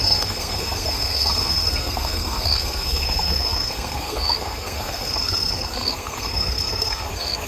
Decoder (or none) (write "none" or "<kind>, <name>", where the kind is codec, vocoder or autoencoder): codec, SNAC